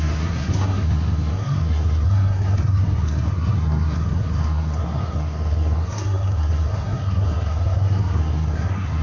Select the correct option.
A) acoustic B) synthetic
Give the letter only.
B